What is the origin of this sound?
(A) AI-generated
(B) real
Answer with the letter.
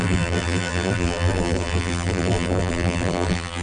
A